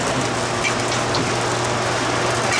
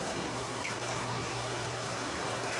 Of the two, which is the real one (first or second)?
first